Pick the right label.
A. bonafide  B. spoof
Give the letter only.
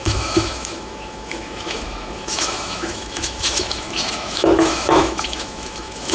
B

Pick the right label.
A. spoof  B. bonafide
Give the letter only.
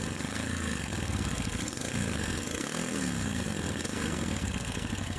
A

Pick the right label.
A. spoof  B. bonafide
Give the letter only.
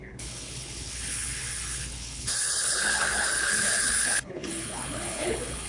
A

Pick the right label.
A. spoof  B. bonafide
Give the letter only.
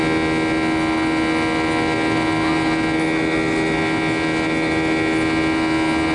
B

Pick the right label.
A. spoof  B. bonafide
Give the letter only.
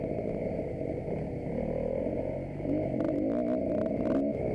B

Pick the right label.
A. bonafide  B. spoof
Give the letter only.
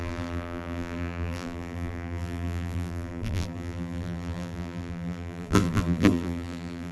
B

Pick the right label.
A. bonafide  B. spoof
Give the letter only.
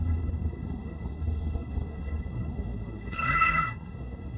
B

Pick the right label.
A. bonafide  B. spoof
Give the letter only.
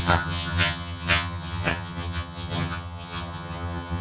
B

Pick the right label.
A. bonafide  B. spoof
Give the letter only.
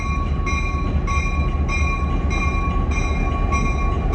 A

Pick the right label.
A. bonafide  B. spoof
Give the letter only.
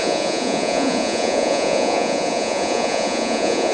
B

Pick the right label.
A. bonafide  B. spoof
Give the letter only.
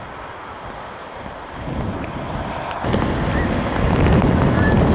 A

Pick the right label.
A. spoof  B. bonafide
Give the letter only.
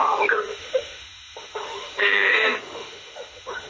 A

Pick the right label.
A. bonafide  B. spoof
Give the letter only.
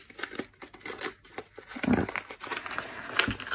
A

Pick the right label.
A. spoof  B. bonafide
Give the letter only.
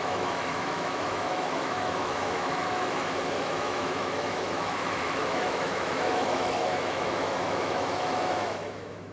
A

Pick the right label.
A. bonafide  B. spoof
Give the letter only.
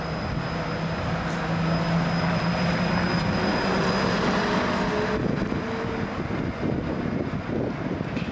A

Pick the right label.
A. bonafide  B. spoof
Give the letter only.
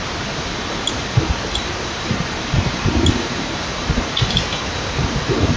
B